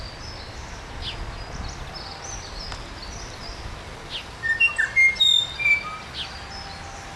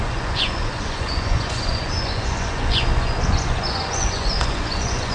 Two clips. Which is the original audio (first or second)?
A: first